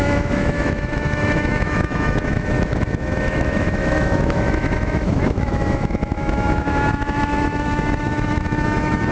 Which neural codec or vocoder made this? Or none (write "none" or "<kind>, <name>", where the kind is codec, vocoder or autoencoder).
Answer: autoencoder, DAC-VAE